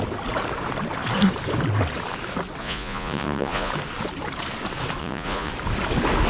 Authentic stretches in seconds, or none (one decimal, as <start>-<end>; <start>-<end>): 0.0-2.6; 3.7-5.0; 5.5-6.3

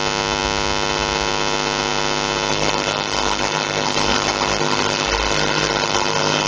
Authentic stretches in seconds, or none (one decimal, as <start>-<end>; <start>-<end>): 0.0-2.5

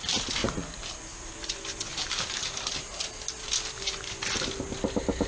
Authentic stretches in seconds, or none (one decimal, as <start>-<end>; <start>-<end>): 0.0-0.4; 1.3-1.9; 3.0-5.3

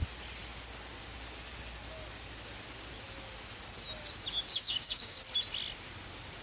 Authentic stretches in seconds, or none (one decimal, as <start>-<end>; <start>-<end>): 0.0-4.5; 5.2-6.4

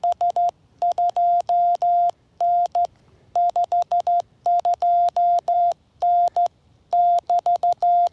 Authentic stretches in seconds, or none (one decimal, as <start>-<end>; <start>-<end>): none

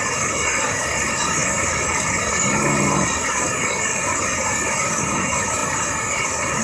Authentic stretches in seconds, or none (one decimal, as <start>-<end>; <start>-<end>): none

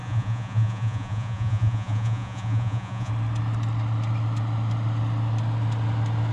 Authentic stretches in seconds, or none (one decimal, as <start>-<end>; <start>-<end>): 3.1-6.3

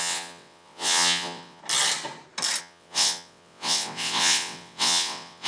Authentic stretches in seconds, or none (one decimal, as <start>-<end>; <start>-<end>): 1.6-2.6